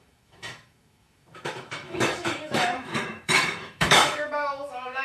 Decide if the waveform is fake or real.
fake